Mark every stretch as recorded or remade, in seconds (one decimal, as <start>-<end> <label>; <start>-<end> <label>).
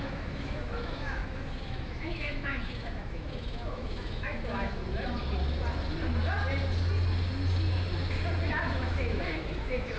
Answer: 0.0-4.8 remade; 4.8-8.5 recorded; 8.5-10.0 remade